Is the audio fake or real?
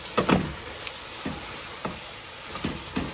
real